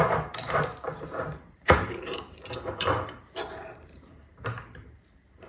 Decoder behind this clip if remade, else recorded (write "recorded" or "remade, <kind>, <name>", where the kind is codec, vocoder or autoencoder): remade, vocoder, BigVGAN v2